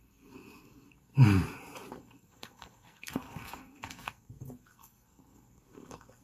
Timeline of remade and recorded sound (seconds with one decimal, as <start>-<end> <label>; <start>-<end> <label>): 0.0-1.1 remade; 1.1-1.9 recorded; 1.9-6.2 remade